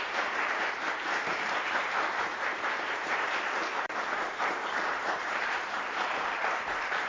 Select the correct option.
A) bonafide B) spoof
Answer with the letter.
B